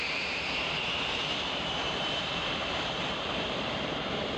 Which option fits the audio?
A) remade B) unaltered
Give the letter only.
A